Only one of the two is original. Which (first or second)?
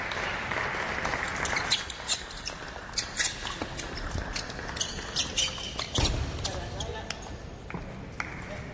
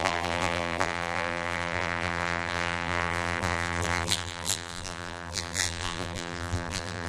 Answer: first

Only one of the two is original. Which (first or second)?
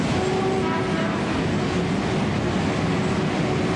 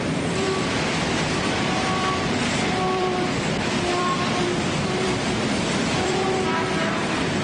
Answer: first